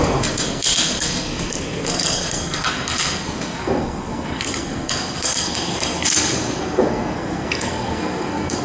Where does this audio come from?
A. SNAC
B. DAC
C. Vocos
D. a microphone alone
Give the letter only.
A